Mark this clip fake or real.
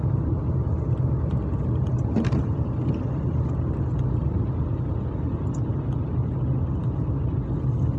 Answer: real